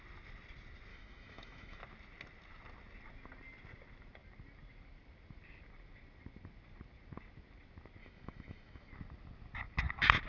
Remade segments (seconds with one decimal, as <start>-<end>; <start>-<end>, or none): 0.9-1.8; 8.0-8.9